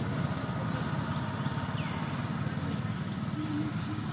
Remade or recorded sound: recorded